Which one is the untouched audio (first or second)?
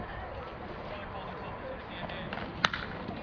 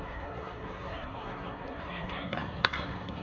first